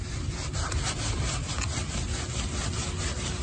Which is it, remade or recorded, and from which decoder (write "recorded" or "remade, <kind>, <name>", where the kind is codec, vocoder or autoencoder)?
recorded